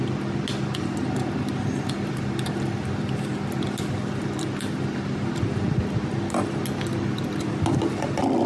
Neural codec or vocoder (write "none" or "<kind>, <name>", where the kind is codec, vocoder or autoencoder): none